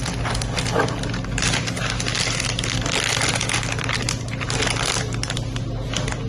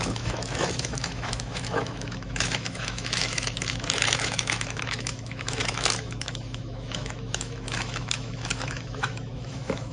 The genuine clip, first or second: first